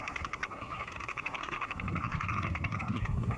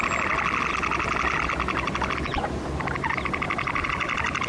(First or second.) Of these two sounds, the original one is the second